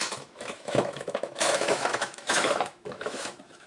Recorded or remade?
remade